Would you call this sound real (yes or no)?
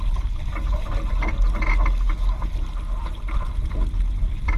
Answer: yes